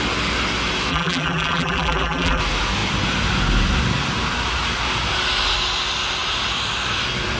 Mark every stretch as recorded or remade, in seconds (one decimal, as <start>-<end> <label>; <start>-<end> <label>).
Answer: 0.0-0.9 recorded; 0.9-2.4 remade; 2.4-7.4 recorded